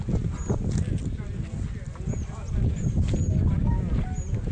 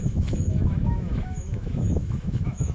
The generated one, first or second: second